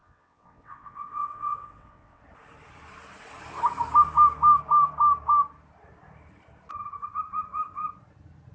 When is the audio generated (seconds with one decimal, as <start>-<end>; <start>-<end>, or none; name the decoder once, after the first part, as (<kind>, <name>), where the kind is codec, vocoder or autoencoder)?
0.0-2.2 (vocoder, WaveNeXt)